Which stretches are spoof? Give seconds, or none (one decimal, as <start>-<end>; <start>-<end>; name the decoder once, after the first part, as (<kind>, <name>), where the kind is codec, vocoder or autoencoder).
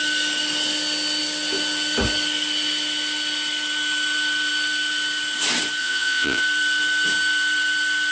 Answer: 5.8-6.4 (vocoder, Vocos)